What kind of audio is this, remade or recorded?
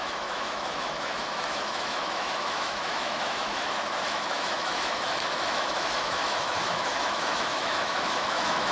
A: remade